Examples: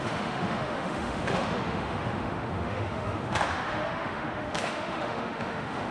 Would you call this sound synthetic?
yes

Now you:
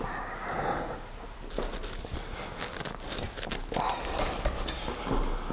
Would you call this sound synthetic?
no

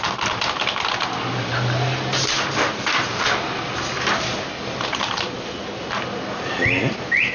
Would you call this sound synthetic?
no